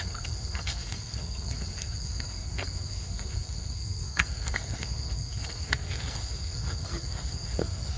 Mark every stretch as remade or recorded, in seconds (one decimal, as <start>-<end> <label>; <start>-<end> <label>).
0.0-8.0 remade